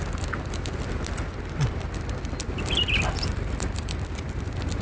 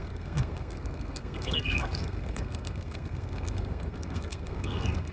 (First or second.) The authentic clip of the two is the first